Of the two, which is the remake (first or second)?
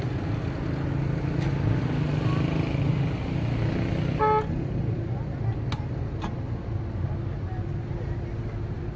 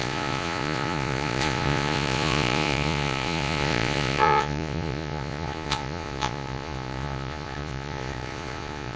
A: second